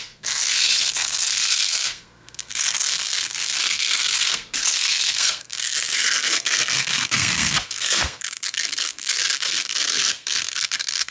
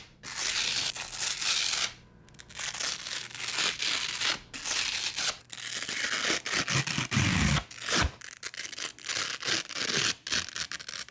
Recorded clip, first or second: second